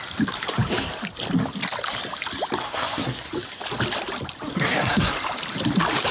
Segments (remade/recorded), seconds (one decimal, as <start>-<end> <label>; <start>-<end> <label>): 0.0-2.6 recorded; 2.6-3.3 remade; 3.3-4.5 recorded; 4.5-5.1 remade; 5.1-6.1 recorded